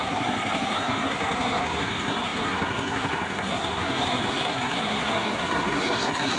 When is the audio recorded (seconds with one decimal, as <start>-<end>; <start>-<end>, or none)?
none